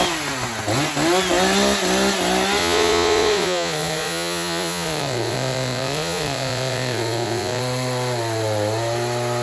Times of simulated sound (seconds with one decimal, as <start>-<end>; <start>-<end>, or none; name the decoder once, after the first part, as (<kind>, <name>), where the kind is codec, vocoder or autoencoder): 2.6-7.6 (vocoder, Vocos)